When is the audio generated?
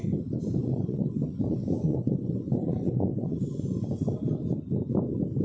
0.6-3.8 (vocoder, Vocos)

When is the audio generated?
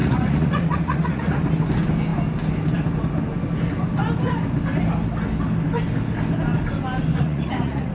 0.0-1.4 (vocoder, Vocos); 7.1-7.9